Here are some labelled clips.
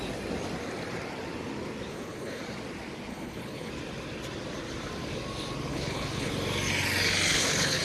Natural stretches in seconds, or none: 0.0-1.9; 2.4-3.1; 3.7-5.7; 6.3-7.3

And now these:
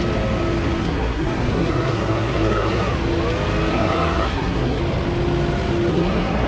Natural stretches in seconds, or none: 0.0-0.8; 2.9-3.7; 4.8-5.9

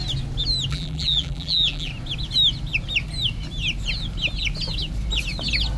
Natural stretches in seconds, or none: 0.0-0.7; 1.9-5.8

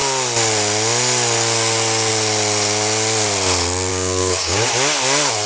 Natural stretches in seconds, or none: 0.0-3.9; 4.7-5.5

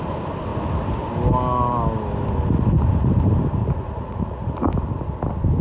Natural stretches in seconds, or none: 0.0-3.6; 4.5-5.6

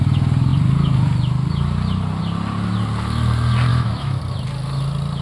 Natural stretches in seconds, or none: 0.0-3.7; 4.2-5.2